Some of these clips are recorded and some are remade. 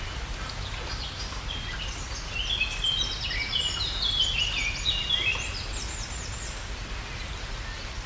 recorded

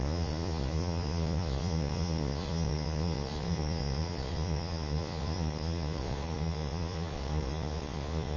remade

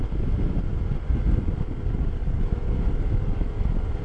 recorded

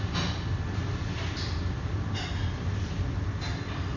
recorded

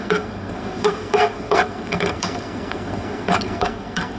remade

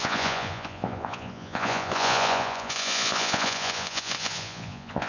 remade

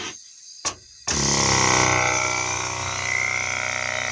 recorded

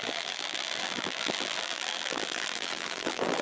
remade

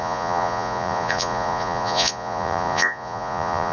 remade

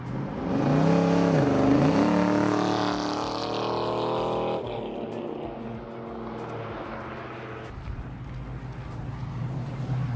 recorded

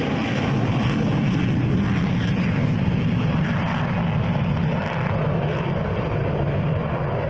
recorded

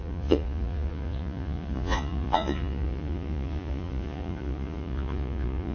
remade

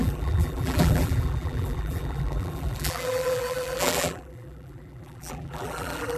remade